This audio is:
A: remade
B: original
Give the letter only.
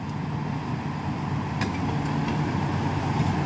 B